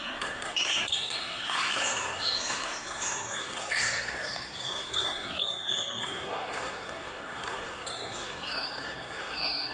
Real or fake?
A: fake